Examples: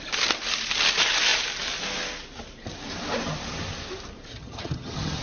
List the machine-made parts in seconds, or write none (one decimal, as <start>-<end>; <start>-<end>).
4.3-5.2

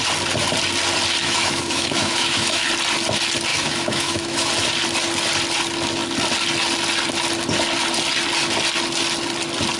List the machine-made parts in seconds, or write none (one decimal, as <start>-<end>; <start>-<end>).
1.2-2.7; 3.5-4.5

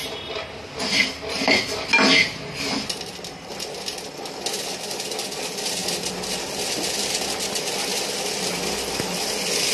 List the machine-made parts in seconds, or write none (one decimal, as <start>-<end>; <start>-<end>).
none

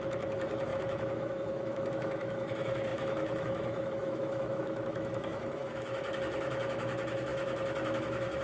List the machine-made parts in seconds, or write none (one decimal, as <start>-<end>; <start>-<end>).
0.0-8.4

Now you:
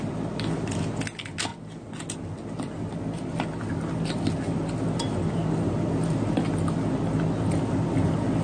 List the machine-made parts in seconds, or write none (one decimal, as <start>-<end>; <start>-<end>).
none

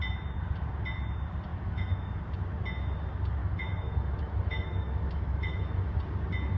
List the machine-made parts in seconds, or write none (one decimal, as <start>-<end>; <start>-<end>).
1.5-2.3; 3.4-6.0

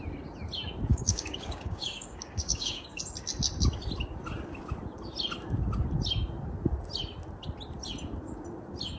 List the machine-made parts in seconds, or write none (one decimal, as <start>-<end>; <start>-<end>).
0.9-3.0

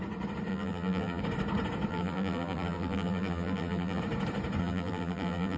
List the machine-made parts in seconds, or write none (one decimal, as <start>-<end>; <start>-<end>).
0.5-1.2; 1.9-4.0; 4.6-5.6